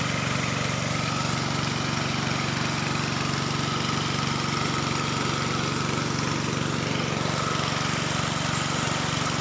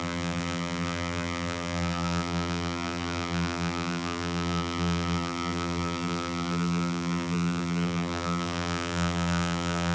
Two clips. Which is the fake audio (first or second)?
second